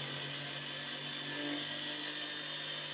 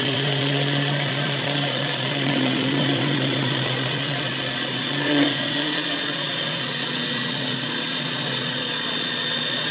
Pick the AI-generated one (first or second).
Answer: second